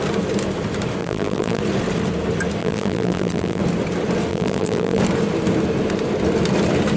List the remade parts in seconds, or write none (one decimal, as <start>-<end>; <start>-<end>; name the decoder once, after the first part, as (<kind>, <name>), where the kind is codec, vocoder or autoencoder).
1.0-1.6 (vocoder, BigVGAN v2); 2.6-3.6; 4.3-5.0